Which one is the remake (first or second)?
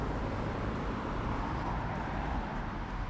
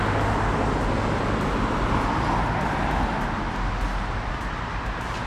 first